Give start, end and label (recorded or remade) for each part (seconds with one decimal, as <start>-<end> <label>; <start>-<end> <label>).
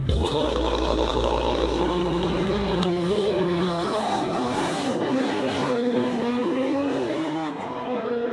0.0-8.3 remade